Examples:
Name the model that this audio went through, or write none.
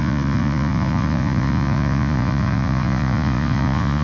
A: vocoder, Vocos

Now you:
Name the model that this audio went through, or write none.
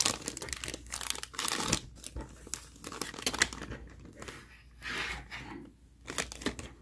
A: none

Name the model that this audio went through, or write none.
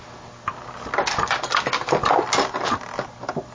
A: none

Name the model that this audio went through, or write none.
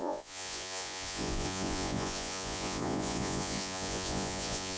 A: vocoder, Vocos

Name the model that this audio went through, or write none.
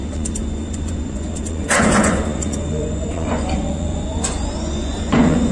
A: vocoder, Vocos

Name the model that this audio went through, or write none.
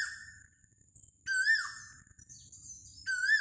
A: none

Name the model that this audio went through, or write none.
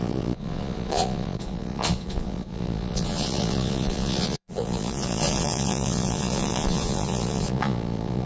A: vocoder, Vocos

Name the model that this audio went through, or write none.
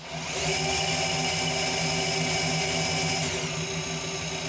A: none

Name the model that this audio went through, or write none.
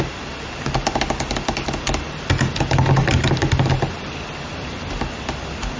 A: none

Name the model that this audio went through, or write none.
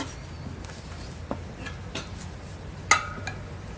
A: none